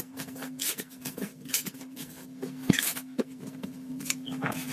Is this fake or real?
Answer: fake